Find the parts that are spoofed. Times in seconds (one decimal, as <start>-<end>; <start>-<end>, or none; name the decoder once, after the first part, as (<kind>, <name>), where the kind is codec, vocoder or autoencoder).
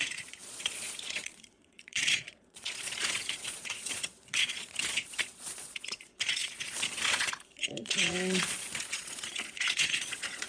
0.0-10.5 (vocoder, Vocos)